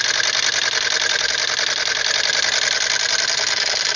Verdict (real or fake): real